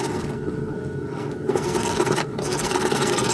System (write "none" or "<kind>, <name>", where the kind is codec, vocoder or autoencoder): codec, SNAC